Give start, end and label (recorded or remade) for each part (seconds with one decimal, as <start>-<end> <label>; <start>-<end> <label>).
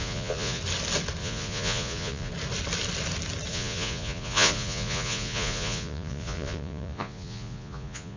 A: 0.0-0.6 remade; 0.6-1.2 recorded; 1.2-2.3 remade; 2.3-3.5 recorded; 3.5-8.2 remade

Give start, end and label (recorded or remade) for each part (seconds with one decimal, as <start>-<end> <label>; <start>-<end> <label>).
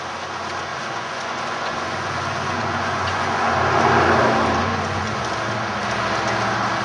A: 0.0-0.7 recorded; 0.7-3.5 remade; 3.5-4.6 recorded; 4.6-5.2 remade; 5.2-6.8 recorded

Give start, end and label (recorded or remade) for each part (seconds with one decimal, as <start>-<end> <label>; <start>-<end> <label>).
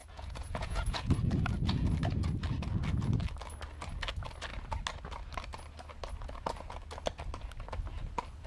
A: 0.0-1.1 remade; 1.1-8.5 recorded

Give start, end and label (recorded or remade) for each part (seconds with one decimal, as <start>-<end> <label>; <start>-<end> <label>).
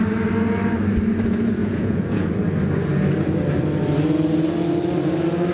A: 0.0-1.6 recorded; 1.6-2.3 remade; 2.3-5.5 recorded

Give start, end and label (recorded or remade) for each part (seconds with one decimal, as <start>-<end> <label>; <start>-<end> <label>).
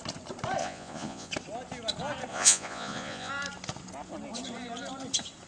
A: 0.0-0.6 recorded; 0.6-1.3 remade; 1.3-2.3 recorded; 2.3-3.3 remade; 3.3-5.5 recorded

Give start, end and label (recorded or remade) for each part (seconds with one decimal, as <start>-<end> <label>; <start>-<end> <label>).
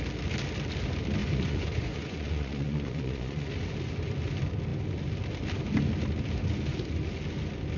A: 0.0-1.2 recorded; 1.2-3.5 remade; 3.5-7.8 recorded